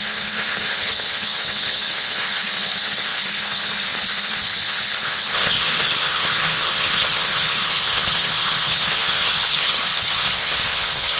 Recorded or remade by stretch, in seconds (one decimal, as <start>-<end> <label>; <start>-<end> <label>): 0.0-11.2 remade